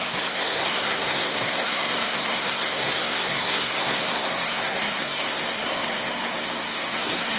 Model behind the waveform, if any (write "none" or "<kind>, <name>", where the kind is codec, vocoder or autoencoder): codec, SNAC